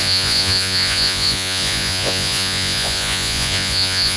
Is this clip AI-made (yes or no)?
yes